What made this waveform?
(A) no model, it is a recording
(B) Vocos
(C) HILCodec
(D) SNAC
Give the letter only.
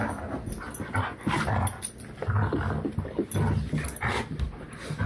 A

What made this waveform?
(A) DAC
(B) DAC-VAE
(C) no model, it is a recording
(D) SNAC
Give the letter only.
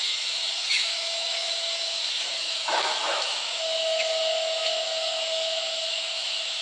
B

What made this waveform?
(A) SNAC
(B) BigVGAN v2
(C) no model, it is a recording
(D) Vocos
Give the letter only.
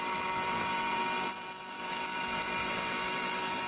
B